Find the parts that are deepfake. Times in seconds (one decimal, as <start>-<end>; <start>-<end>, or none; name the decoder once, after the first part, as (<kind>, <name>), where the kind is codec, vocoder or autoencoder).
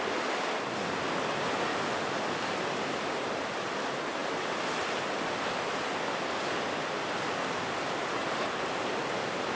none